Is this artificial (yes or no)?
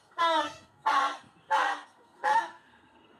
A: yes